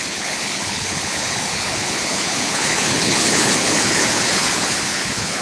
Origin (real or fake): fake